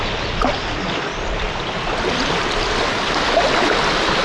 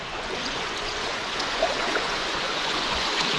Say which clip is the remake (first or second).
second